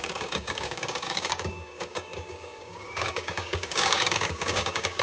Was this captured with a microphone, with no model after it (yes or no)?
no